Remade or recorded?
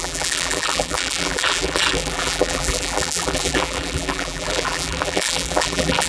remade